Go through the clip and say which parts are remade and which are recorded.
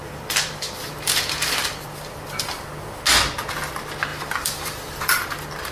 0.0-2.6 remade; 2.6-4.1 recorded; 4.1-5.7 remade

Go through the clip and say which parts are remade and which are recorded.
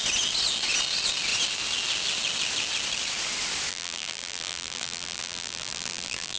0.0-3.7 recorded; 3.7-6.4 remade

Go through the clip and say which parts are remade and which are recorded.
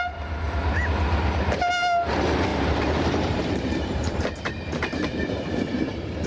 0.0-2.5 recorded; 2.5-6.3 remade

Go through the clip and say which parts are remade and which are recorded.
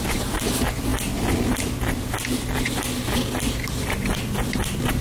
0.0-5.0 recorded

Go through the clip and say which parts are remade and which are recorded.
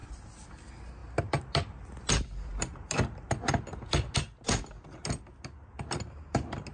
0.0-6.7 recorded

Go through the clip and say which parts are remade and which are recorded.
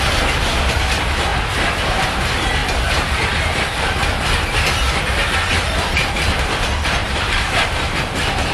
0.0-7.0 recorded; 7.0-8.0 remade; 8.0-8.5 recorded